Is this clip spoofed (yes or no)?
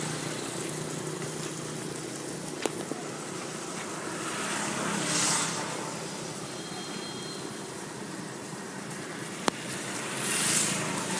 no